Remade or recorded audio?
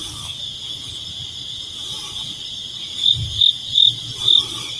recorded